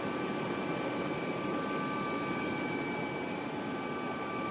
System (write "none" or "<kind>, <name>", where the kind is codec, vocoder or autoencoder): none